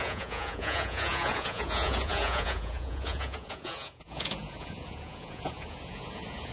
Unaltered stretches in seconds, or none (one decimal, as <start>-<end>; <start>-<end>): none

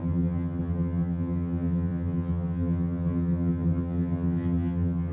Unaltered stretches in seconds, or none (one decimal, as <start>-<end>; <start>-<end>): none

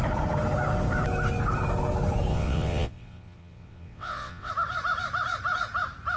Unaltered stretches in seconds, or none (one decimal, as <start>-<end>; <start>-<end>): 0.0-2.3; 4.5-6.2

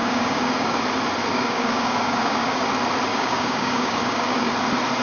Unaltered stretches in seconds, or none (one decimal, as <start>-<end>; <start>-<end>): 0.8-1.3; 2.6-3.1; 4.5-5.0

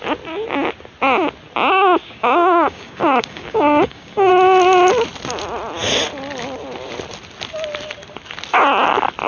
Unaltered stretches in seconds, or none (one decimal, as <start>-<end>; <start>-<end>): 0.0-2.0; 4.3-9.3

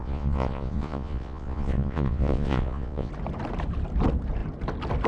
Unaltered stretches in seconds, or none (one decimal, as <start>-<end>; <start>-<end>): 3.1-5.1